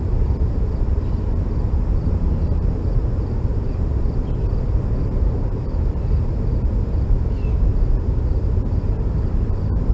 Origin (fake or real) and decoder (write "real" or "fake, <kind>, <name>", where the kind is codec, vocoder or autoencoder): fake, vocoder, BigVGAN v2